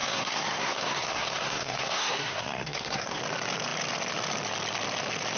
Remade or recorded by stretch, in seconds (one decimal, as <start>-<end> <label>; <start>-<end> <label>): 0.0-3.2 remade; 3.2-5.4 recorded